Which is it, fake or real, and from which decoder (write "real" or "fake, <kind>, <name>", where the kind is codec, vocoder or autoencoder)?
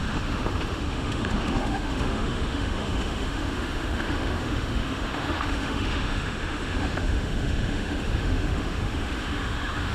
fake, autoencoder, DAC-VAE